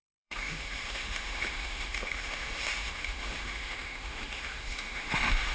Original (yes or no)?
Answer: no